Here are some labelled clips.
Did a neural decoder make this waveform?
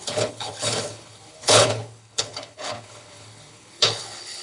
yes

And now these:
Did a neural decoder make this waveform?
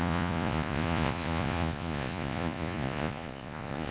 yes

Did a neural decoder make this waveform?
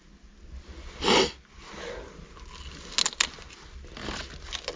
no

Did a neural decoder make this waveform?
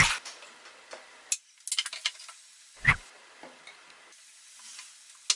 no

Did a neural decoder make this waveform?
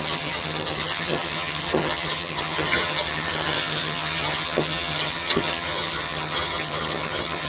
yes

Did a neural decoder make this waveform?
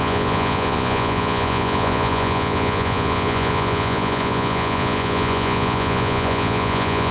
yes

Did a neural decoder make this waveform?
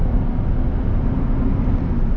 no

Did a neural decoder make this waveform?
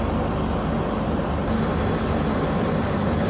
no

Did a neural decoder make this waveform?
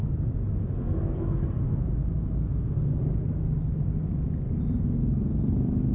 no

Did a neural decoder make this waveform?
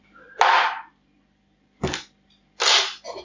no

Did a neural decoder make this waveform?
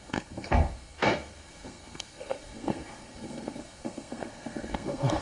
yes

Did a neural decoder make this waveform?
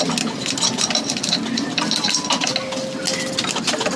no